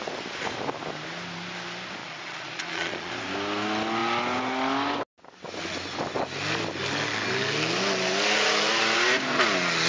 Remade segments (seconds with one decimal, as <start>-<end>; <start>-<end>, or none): 2.0-3.1

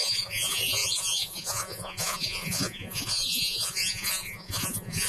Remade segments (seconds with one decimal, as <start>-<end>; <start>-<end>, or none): 0.0-5.1

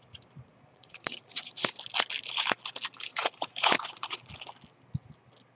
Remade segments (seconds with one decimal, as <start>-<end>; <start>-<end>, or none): 0.5-1.8; 3.1-4.3

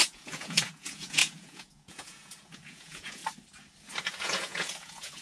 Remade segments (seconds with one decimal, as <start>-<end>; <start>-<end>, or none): 0.0-3.2; 4.0-5.2

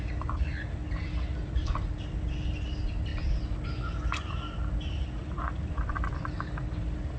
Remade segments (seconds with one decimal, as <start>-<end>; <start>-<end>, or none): none